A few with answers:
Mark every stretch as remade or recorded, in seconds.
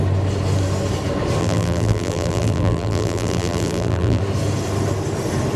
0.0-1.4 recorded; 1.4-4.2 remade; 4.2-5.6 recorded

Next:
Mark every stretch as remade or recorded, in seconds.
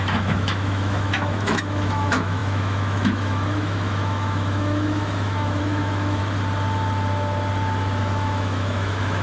0.0-6.2 remade; 6.2-8.0 recorded; 8.0-9.2 remade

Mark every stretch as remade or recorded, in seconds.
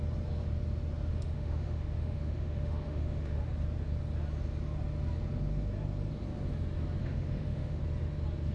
0.0-1.1 recorded; 1.1-3.4 remade; 3.4-7.0 recorded; 7.0-7.8 remade; 7.8-8.5 recorded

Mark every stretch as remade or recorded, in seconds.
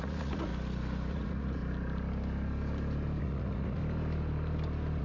0.0-0.5 remade; 0.5-1.1 recorded; 1.1-1.6 remade; 1.6-3.2 recorded; 3.2-3.8 remade; 3.8-5.0 recorded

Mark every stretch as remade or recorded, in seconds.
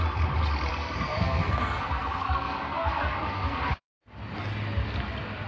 0.0-0.7 recorded; 0.7-4.0 remade; 4.0-5.5 recorded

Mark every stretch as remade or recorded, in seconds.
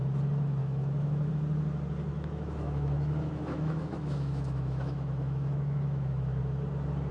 0.0-0.6 recorded; 0.6-1.3 remade; 1.3-2.1 recorded; 2.1-6.4 remade; 6.4-7.1 recorded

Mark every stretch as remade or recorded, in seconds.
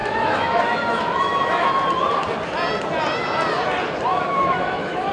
0.0-1.7 remade; 1.7-4.1 recorded; 4.1-5.1 remade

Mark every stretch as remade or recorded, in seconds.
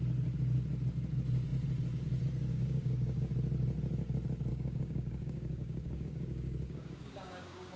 0.0-2.5 recorded; 2.5-3.3 remade; 3.3-4.5 recorded; 4.5-7.8 remade